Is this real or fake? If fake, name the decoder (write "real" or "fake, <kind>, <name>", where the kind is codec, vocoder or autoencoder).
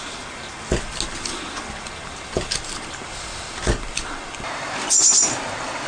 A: real